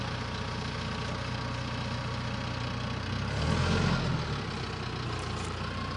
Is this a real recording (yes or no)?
yes